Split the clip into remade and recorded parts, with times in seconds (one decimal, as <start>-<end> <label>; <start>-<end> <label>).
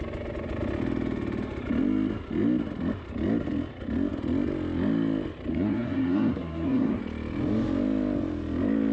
0.0-5.5 recorded; 5.5-7.0 remade; 7.0-8.9 recorded